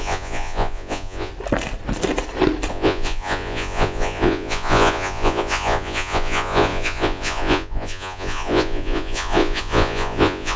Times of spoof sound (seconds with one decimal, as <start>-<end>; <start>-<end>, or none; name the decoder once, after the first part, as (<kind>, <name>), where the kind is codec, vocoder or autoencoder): 0.0-1.3 (vocoder, Vocos); 2.7-10.6